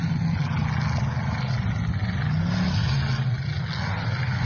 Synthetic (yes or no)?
no